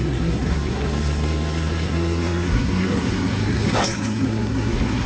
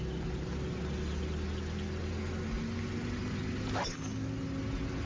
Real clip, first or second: second